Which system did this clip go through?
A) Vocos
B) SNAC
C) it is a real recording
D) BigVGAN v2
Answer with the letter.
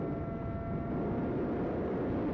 C